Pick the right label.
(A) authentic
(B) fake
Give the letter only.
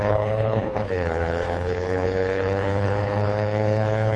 B